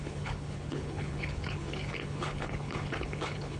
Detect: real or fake fake